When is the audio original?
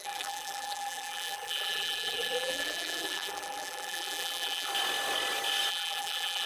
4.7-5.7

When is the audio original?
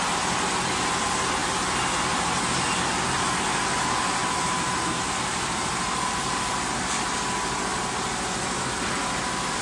0.0-4.2; 7.1-9.6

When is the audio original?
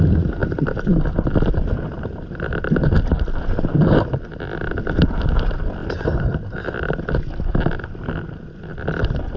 0.0-9.4